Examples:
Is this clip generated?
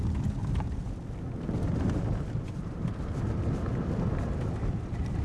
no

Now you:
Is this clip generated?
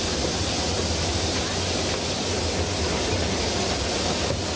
no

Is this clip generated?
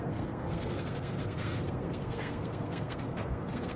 yes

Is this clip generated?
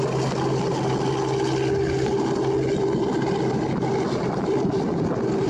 no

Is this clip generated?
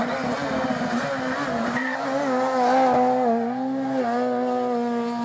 no